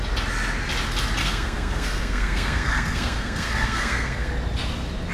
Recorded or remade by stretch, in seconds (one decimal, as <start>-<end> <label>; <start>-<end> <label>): 0.0-1.2 recorded; 1.2-4.3 remade; 4.3-5.1 recorded